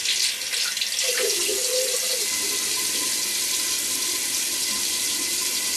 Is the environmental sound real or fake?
real